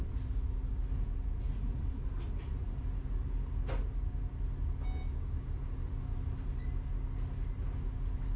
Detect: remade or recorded recorded